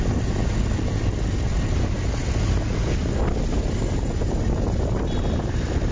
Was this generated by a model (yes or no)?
no